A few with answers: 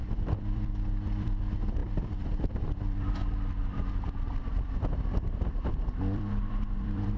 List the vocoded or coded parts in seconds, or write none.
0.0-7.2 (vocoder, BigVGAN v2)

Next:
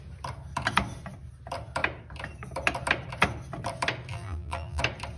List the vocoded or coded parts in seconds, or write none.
4.1-4.8 (vocoder, BigVGAN v2)

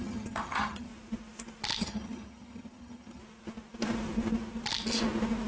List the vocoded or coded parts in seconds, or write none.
0.0-0.9 (vocoder, HiFi-GAN); 1.8-3.2

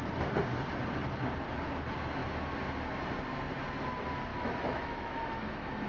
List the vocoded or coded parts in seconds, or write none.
4.3-5.9 (autoencoder, DAC-VAE)

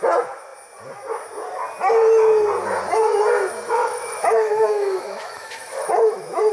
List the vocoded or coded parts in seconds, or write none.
3.8-6.5 (autoencoder, DAC-VAE)